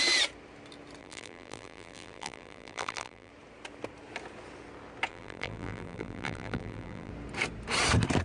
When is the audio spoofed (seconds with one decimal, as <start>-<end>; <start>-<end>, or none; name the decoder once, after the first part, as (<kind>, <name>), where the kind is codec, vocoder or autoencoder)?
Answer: 1.0-3.3 (vocoder, BigVGAN v2); 5.1-7.1